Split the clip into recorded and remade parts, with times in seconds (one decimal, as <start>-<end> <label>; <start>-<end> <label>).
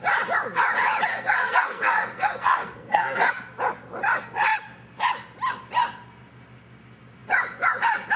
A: 0.0-1.1 recorded; 1.1-3.3 remade; 3.3-8.2 recorded